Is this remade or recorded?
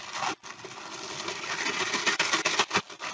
recorded